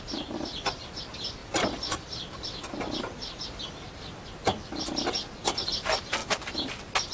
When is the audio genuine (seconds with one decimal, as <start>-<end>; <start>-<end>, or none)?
0.0-7.1